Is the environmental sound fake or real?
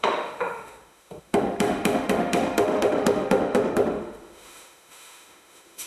fake